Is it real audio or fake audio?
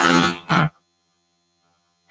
fake